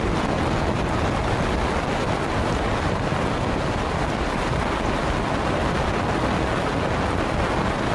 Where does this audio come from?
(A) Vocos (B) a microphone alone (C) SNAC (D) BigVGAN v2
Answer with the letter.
B